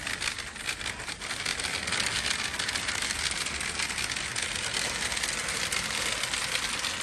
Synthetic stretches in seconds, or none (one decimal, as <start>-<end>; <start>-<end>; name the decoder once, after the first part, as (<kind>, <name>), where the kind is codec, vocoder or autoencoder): none